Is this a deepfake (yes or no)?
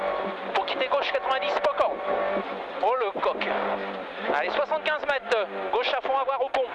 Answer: no